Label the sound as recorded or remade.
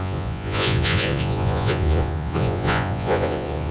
remade